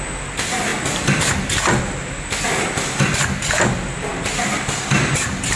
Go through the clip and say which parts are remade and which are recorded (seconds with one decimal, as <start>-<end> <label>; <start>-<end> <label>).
0.0-5.6 recorded